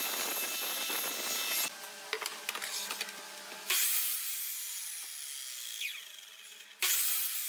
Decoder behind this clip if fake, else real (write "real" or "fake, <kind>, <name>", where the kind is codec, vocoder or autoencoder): real